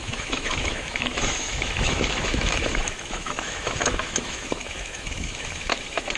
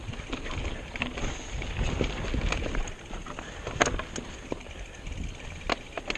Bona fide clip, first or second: second